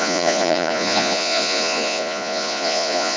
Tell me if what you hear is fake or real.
fake